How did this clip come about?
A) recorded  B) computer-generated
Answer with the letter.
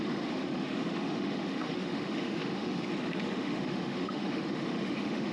B